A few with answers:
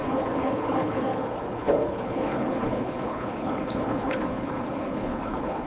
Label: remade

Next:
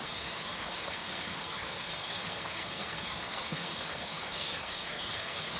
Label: remade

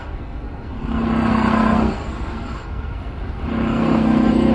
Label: remade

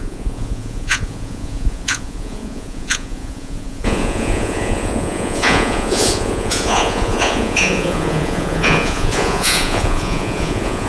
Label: remade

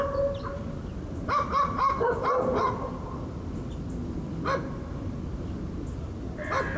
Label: recorded